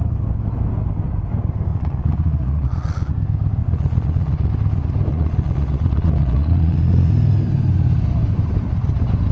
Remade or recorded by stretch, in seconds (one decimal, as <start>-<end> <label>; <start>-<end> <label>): 0.0-1.7 recorded; 1.7-3.1 remade; 3.1-3.6 recorded; 3.6-4.5 remade; 4.5-5.1 recorded; 5.1-7.1 remade; 7.1-9.3 recorded